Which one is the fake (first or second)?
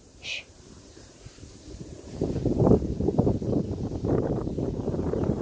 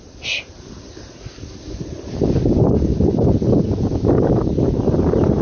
first